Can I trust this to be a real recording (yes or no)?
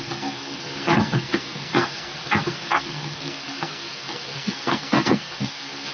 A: no